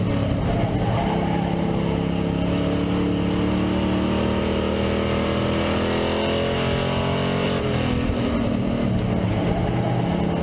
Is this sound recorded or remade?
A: recorded